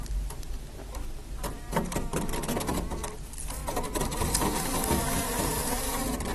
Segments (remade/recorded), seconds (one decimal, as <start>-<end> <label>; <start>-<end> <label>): 0.0-3.6 recorded; 3.6-6.3 remade